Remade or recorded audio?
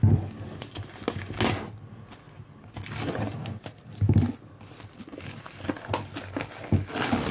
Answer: recorded